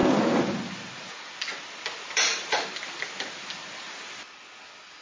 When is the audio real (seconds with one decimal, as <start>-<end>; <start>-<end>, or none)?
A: 0.0-5.0